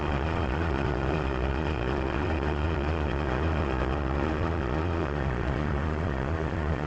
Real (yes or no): no